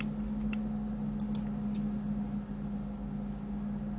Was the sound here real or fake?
real